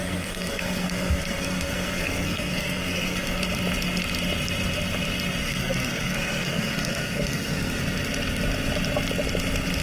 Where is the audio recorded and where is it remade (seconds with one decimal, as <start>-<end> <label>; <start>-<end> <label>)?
0.0-3.4 remade; 3.4-5.4 recorded; 5.4-7.8 remade; 7.8-9.8 recorded